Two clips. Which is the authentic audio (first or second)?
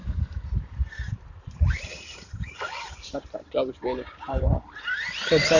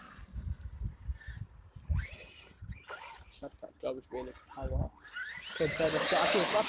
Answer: second